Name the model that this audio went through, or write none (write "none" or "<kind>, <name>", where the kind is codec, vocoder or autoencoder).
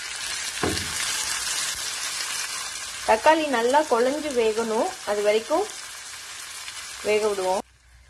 none